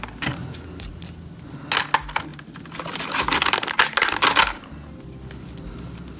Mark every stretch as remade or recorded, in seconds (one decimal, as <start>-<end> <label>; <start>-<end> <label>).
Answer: 0.0-6.2 recorded